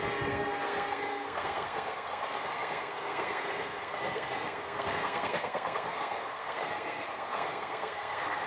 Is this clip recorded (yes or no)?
no